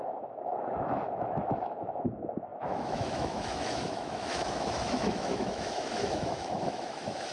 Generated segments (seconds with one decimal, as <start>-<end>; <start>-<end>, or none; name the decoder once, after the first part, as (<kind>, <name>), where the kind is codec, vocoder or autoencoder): 0.0-7.3 (autoencoder, DAC-VAE)